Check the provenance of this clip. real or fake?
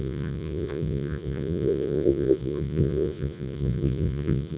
fake